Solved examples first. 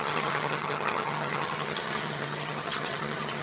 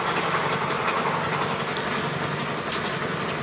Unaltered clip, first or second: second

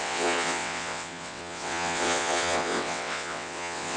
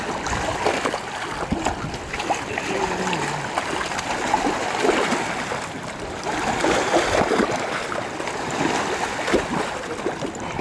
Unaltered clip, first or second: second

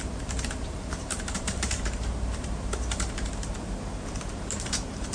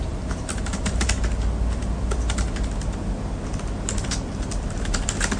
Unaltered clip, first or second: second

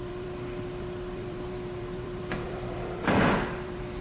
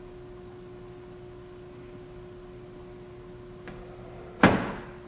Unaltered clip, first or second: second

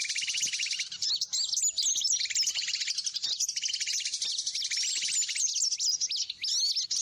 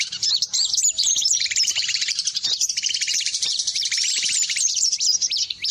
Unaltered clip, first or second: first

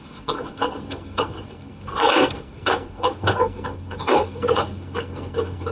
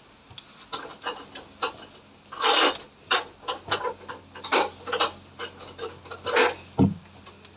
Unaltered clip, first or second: second